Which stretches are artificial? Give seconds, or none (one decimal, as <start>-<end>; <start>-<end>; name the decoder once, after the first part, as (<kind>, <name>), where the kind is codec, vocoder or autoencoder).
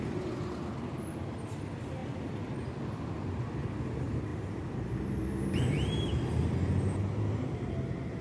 none